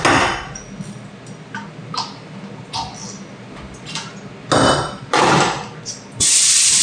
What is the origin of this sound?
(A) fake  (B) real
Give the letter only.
B